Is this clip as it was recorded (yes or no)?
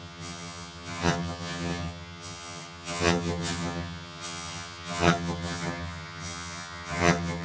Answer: no